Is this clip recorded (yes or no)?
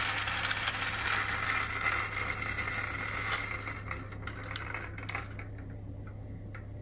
yes